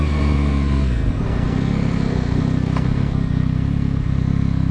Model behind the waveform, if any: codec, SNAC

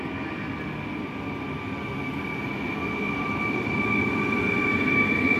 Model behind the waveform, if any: none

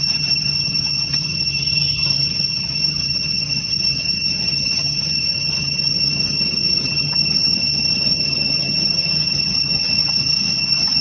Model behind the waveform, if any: vocoder, HiFi-GAN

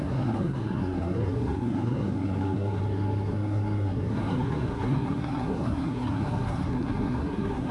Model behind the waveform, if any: codec, SNAC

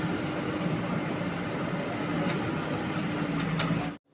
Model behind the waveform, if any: none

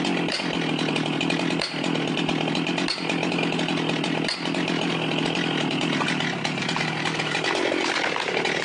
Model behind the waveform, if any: none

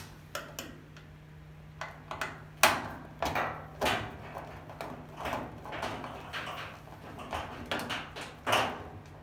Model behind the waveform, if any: none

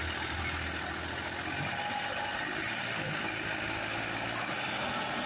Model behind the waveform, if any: none